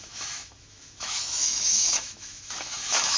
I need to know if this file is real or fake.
fake